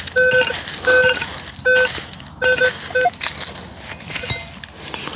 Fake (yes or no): no